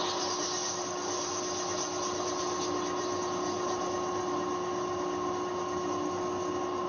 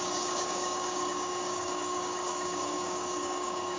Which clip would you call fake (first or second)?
second